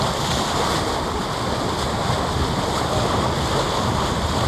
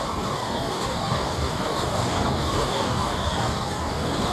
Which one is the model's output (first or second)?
second